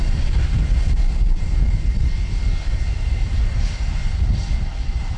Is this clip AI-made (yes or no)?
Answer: no